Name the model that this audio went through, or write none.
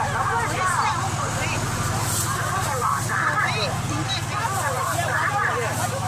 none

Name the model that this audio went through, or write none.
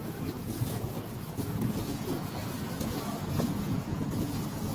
vocoder, Vocos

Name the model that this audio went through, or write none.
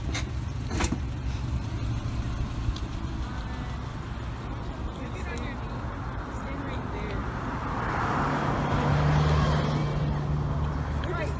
none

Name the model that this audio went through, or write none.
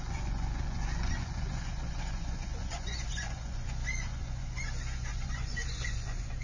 vocoder, Vocos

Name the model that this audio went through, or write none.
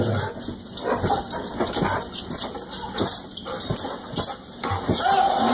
none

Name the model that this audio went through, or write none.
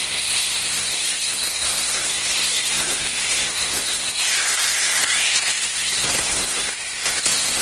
codec, SNAC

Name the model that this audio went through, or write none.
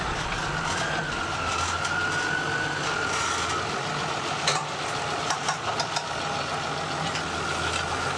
none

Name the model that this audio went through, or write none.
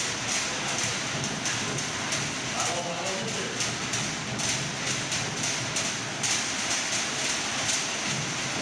none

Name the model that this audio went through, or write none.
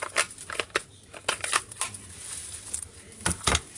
none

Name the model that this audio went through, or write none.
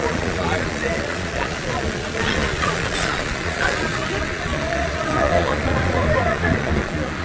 vocoder, Vocos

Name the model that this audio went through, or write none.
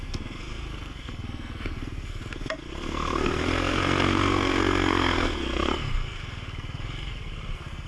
codec, SNAC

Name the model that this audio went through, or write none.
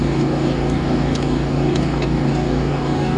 codec, DAC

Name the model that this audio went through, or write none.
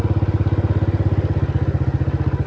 none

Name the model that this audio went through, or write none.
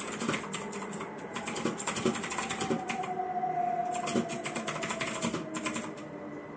none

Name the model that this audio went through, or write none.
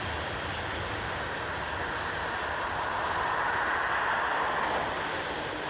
none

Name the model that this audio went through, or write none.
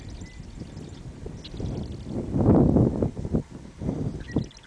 none